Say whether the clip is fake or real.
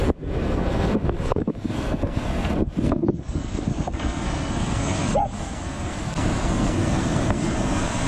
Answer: fake